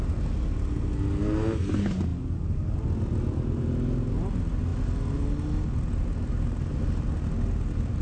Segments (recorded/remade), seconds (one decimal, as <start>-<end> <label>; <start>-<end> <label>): 0.0-8.0 recorded